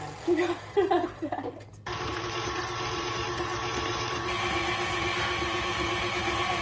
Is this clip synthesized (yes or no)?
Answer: no